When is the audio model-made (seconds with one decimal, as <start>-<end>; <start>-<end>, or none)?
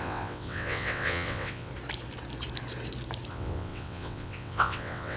0.0-1.7; 3.3-5.2